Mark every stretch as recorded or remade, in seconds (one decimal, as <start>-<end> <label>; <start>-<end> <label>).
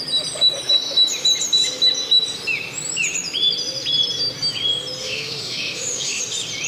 0.0-5.0 recorded; 5.0-6.2 remade; 6.2-6.7 recorded